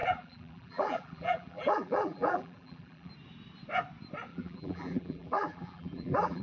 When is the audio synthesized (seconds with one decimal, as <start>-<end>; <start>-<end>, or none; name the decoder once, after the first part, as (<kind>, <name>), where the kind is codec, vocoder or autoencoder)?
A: 0.0-3.1 (vocoder, BigVGAN v2); 4.3-6.4